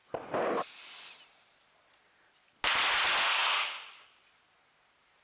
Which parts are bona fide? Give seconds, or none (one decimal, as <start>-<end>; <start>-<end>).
0.0-5.2